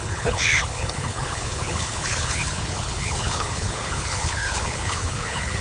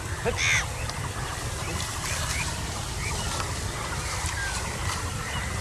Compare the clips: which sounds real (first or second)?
second